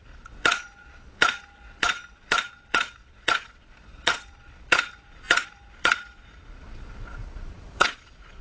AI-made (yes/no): yes